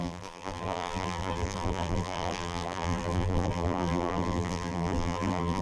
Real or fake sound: fake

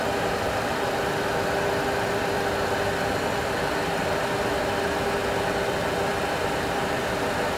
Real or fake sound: real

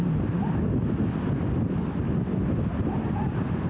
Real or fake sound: real